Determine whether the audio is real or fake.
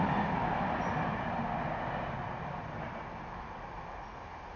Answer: real